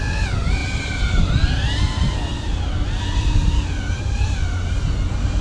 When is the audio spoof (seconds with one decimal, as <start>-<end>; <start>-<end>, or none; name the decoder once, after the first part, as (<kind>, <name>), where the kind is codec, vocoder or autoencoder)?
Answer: 0.6-1.8 (vocoder, BigVGAN v2); 2.3-4.7

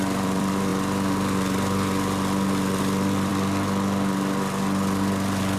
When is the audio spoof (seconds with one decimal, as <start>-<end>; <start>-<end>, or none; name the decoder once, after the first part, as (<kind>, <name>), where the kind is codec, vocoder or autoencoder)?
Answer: 0.0-0.7 (vocoder, BigVGAN v2); 2.8-3.3

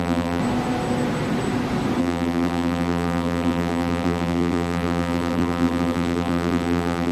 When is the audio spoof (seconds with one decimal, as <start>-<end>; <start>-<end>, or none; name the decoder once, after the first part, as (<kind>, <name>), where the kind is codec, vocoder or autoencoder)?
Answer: 0.0-0.4 (vocoder, BigVGAN v2); 2.0-7.1